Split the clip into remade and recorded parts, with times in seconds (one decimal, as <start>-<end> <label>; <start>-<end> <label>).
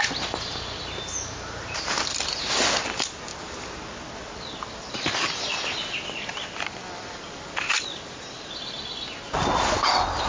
0.0-10.3 recorded